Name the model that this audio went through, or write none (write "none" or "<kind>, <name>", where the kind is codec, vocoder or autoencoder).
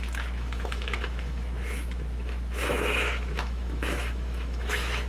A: autoencoder, DAC-VAE